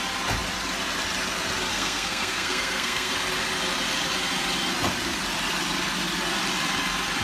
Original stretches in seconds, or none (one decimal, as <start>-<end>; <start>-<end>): 0.0-1.7; 3.1-7.2